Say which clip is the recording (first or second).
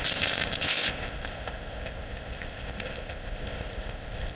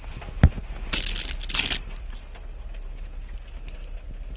second